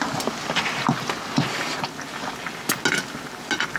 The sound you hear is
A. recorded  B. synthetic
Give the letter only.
A